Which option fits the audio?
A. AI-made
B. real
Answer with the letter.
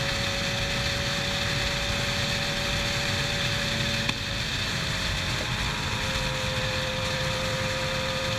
B